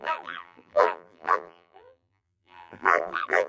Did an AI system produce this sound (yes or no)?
yes